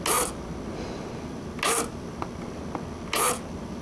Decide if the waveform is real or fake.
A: real